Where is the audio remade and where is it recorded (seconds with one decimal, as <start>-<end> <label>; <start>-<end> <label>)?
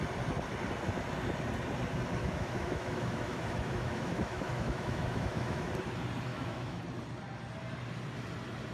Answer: 0.0-2.2 recorded; 2.2-5.7 remade; 5.7-6.3 recorded; 6.3-6.8 remade; 6.8-8.7 recorded